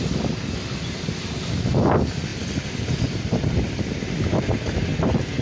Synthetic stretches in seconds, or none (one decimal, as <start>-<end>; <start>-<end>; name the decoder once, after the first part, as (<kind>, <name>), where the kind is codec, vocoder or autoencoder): 2.3-4.2 (vocoder, BigVGAN v2)